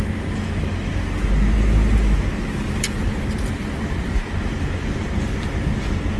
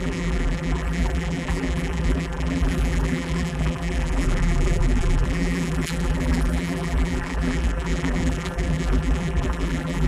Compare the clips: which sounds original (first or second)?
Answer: first